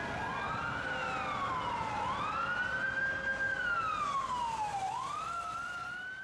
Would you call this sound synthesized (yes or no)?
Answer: no